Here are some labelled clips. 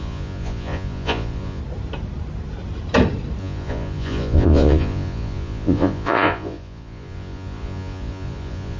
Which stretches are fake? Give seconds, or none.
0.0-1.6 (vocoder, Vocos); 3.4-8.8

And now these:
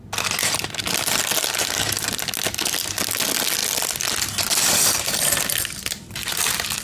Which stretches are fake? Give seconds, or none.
none

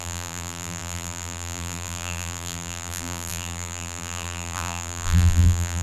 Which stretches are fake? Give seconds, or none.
0.0-5.8 (vocoder, BigVGAN v2)

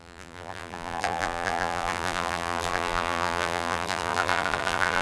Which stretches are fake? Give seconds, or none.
0.0-5.0 (vocoder, BigVGAN v2)

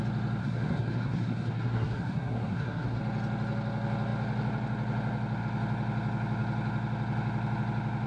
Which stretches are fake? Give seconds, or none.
0.4-3.0 (codec, SNAC)